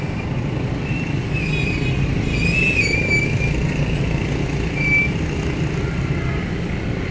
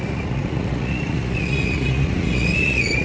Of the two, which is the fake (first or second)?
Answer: second